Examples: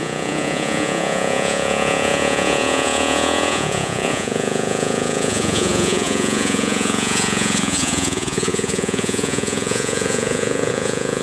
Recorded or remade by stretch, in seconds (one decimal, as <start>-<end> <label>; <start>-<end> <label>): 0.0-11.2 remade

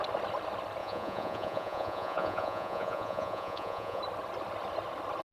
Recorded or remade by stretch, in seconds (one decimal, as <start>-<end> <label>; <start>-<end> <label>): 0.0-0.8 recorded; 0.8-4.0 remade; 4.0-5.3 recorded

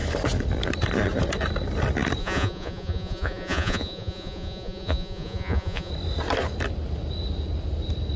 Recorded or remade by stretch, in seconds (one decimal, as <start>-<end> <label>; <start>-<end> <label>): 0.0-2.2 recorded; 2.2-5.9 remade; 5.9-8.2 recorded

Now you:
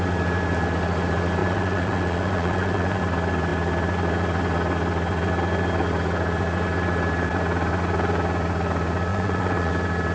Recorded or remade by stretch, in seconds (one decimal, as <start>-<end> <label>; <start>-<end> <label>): 0.0-1.4 recorded; 1.4-3.0 remade; 3.0-9.1 recorded; 9.1-9.7 remade; 9.7-10.1 recorded

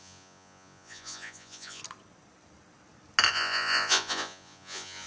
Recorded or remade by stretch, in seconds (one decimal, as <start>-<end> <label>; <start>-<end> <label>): 0.0-1.8 remade; 1.8-3.3 recorded; 3.3-5.1 remade

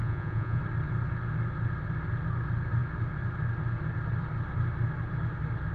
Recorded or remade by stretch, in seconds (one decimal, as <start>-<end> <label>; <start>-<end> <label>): 0.0-0.6 remade; 0.6-5.7 recorded

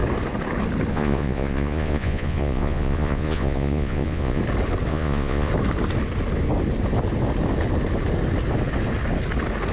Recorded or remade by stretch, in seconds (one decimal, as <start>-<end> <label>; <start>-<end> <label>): 0.0-0.9 recorded; 0.9-4.4 remade; 4.4-4.9 recorded; 4.9-5.5 remade; 5.5-9.7 recorded

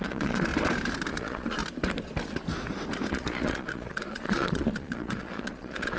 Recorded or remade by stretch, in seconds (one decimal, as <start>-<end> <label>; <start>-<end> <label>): 0.0-0.5 remade; 0.5-1.1 recorded; 1.1-1.6 remade; 1.6-3.1 recorded; 3.1-6.0 remade